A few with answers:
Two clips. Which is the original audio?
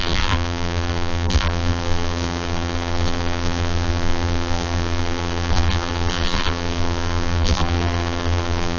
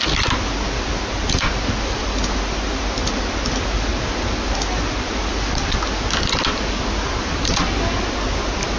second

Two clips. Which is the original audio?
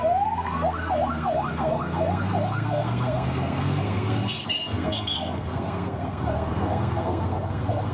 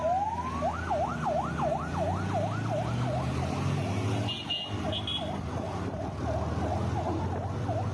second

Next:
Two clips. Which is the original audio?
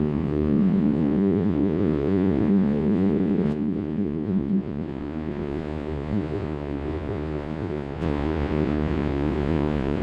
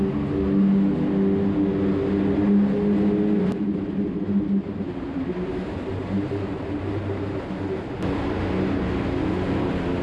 second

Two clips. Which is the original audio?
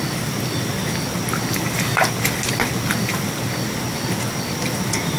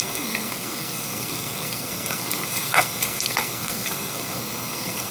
first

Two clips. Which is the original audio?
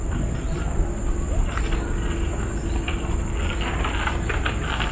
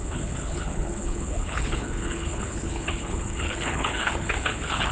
first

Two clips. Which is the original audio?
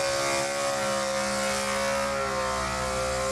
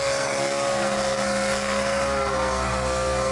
first